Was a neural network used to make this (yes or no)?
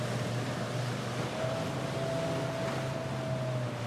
no